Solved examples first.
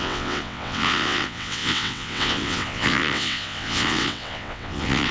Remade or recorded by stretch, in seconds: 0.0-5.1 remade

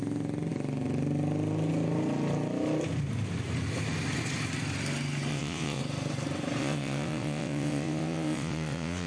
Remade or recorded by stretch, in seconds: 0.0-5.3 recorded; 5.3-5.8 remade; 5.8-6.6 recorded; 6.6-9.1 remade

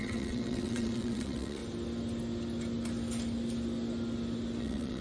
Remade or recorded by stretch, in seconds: 0.0-1.6 remade; 1.6-4.6 recorded; 4.6-5.0 remade